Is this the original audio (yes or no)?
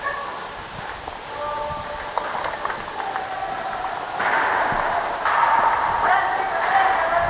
yes